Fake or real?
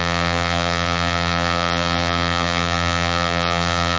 fake